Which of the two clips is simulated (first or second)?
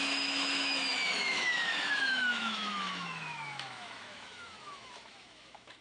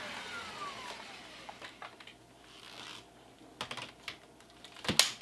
first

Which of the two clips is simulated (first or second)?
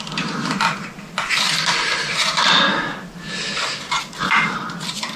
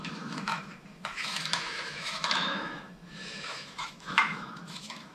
second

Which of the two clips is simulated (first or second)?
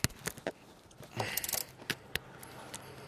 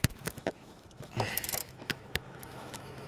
second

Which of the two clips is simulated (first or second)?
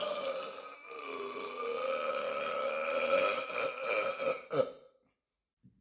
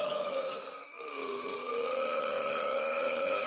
second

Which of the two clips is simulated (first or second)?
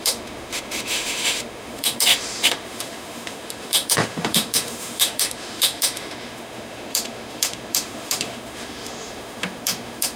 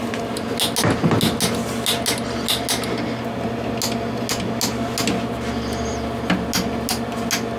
first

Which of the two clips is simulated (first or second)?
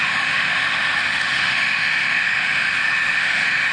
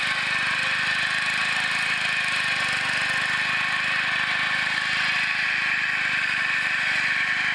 first